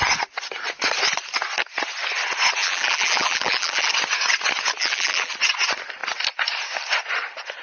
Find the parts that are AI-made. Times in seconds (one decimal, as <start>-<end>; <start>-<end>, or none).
2.6-3.9; 4.8-5.3

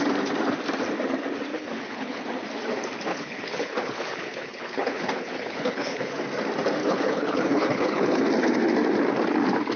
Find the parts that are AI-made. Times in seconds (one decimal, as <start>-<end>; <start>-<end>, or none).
1.5-2.2; 3.1-6.2; 6.8-8.2

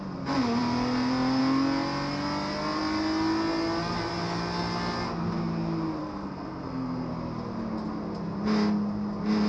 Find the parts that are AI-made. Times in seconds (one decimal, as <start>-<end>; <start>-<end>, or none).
6.0-7.1

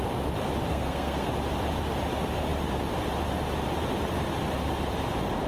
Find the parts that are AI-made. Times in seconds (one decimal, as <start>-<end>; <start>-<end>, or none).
0.7-1.3

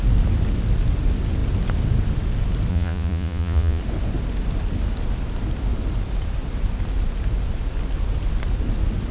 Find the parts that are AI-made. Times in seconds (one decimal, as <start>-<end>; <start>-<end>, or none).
2.7-3.8